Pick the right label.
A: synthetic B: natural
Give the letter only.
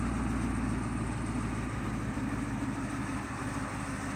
B